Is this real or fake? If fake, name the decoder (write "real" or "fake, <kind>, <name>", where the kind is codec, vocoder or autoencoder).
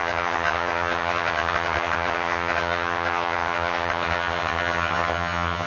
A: fake, vocoder, HiFi-GAN